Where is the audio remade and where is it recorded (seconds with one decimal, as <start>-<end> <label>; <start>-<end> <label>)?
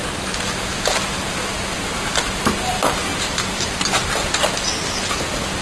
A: 0.0-3.1 recorded; 3.1-3.8 remade; 3.8-5.6 recorded